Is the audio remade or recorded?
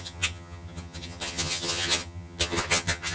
remade